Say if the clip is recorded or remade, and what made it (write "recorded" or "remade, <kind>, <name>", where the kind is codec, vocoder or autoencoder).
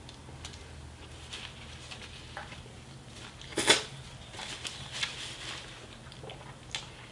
recorded